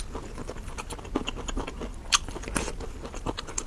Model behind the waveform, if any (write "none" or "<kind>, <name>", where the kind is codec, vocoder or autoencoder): none